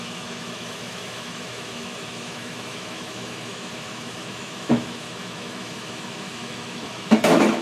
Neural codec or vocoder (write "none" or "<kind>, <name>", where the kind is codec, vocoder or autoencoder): autoencoder, DAC-VAE